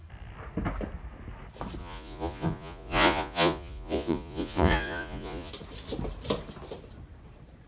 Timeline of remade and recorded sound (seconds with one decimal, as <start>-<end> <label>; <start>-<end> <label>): 0.0-1.8 recorded; 1.8-5.5 remade; 5.5-7.7 recorded